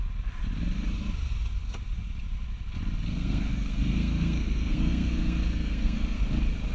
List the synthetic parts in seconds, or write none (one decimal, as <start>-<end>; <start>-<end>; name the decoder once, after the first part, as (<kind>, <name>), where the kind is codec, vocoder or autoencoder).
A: 3.1-6.2 (codec, SNAC)